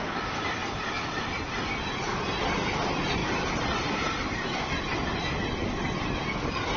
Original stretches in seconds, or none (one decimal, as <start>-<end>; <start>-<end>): 0.0-6.8